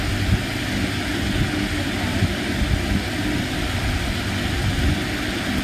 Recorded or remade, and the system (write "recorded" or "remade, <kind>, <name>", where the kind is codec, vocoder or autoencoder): recorded